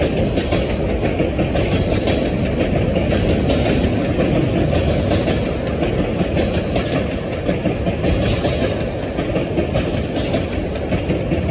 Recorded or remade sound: recorded